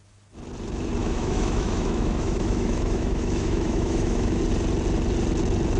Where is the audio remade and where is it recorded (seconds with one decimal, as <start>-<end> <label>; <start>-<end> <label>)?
0.0-1.0 recorded; 1.0-4.4 remade; 4.4-5.8 recorded